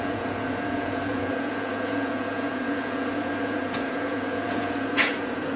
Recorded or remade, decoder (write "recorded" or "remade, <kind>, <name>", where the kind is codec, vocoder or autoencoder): remade, vocoder, Vocos